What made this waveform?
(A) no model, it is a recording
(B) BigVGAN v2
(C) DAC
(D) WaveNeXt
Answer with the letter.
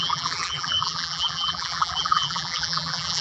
B